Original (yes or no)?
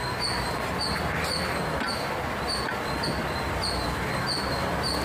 yes